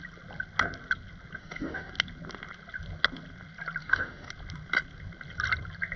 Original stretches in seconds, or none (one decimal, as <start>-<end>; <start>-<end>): 0.0-1.4; 1.9-3.8; 4.3-6.0